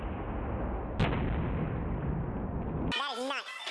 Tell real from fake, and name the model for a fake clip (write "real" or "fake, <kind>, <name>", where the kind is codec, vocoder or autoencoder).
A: real